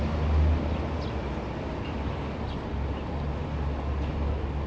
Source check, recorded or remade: recorded